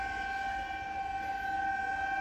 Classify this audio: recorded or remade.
recorded